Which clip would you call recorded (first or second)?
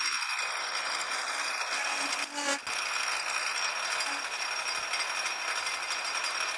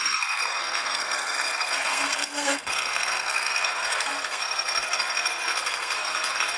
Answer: first